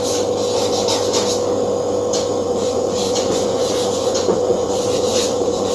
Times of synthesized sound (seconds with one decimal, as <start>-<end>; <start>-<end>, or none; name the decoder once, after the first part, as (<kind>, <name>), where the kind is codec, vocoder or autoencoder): 2.4-5.7 (vocoder, Vocos)